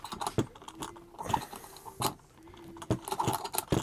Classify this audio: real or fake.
real